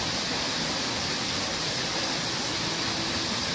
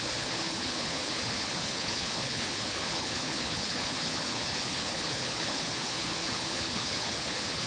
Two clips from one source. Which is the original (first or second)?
first